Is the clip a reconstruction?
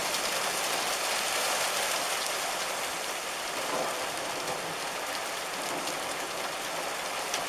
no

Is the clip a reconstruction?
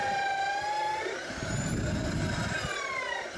yes